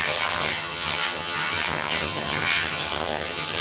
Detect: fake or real fake